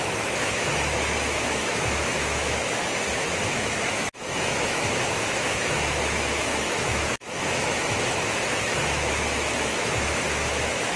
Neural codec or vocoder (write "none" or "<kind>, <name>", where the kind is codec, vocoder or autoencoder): autoencoder, DAC-VAE